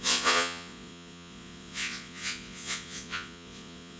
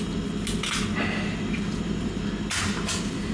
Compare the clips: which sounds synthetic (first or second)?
first